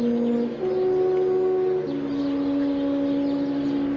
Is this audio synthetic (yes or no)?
no